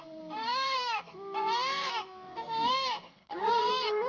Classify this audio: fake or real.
fake